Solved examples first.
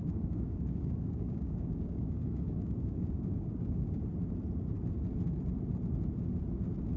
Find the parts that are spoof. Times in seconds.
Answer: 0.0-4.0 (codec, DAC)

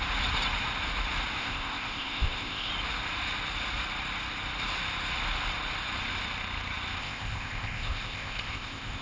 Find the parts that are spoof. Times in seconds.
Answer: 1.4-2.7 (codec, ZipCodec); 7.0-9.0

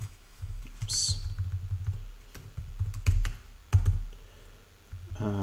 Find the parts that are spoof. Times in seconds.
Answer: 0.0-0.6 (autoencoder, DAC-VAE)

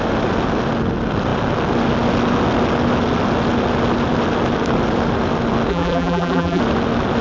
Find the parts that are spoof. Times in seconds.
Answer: 5.7-6.6 (vocoder, BigVGAN v2)